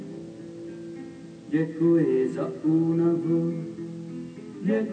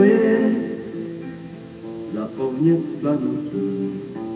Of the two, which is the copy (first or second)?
second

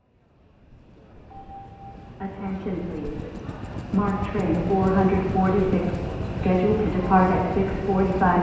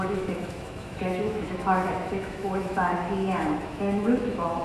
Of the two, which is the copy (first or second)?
second